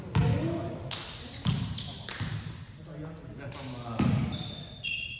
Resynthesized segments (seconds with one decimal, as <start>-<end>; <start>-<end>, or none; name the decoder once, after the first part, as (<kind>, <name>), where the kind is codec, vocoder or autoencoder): none